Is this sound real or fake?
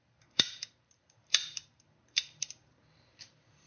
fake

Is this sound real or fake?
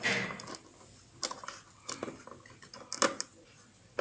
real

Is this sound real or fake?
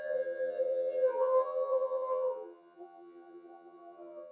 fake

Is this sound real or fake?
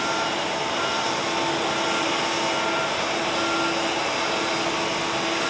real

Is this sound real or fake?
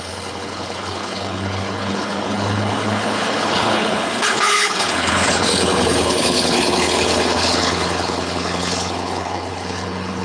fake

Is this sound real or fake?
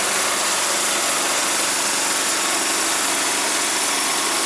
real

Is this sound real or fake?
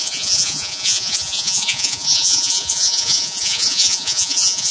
fake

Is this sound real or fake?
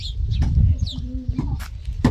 real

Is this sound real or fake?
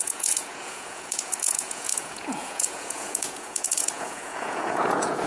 fake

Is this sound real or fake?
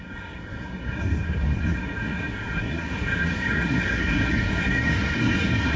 fake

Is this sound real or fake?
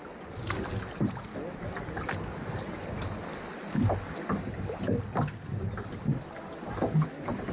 real